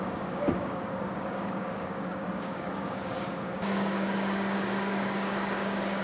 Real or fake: fake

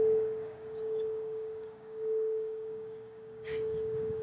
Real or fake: fake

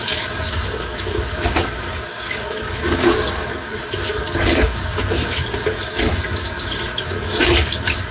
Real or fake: fake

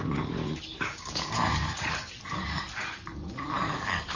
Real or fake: fake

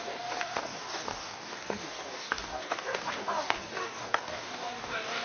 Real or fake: fake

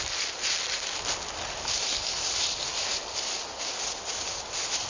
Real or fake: real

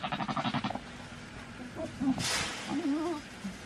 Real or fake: real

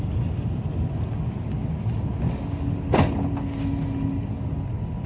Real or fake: real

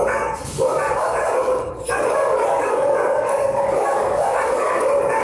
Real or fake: fake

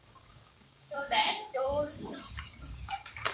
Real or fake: fake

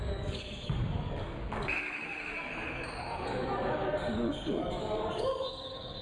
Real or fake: fake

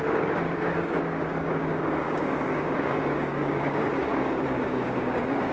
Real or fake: fake